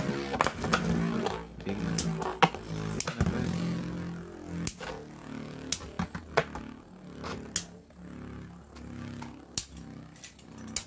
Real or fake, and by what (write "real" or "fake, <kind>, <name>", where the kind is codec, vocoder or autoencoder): real